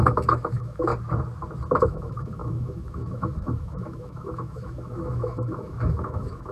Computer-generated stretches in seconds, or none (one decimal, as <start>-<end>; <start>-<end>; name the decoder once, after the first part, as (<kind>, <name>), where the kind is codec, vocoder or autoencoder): 0.0-0.9 (autoencoder, DAC-VAE); 1.8-6.5